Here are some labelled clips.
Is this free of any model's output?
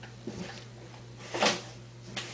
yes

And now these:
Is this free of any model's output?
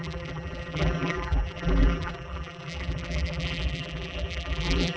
no